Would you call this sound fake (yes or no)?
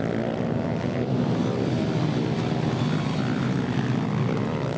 no